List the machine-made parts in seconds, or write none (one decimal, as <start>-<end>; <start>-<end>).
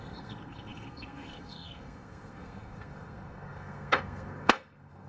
0.0-5.1